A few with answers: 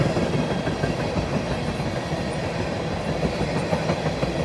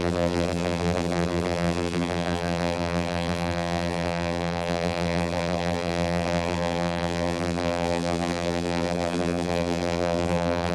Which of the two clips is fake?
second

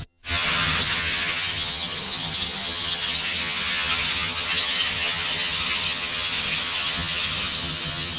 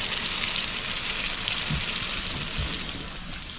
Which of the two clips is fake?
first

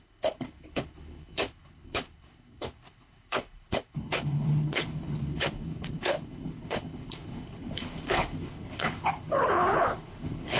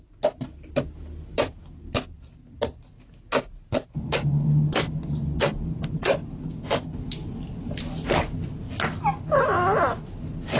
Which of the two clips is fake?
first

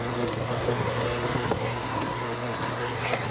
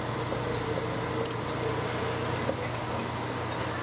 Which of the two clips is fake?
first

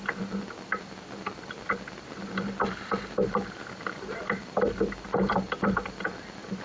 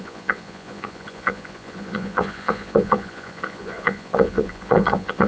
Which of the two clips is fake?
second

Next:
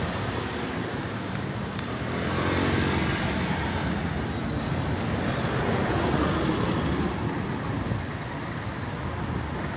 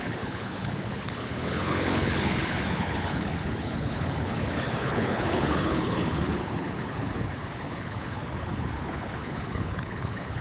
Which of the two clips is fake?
second